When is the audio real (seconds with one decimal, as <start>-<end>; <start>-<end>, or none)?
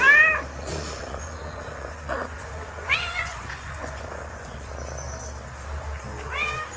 0.0-0.6; 4.7-6.8